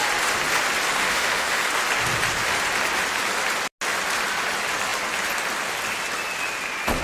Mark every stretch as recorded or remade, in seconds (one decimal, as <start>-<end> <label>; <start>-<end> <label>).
0.0-1.0 recorded; 1.0-1.6 remade; 1.6-7.0 recorded